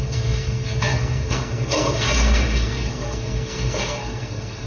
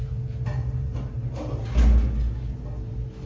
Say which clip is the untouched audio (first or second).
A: second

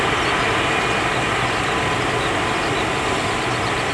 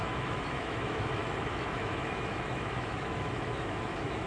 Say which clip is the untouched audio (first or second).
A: first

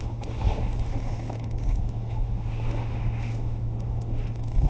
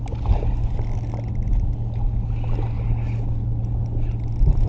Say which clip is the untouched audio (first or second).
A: second